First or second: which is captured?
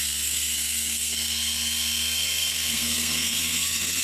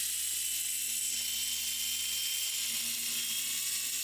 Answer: second